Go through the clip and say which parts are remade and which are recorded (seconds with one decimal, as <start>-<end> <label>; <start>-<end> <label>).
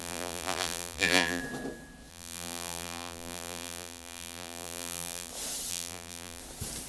0.0-1.4 remade; 1.4-2.1 recorded; 2.1-5.3 remade; 5.3-5.7 recorded; 5.7-6.4 remade; 6.4-6.9 recorded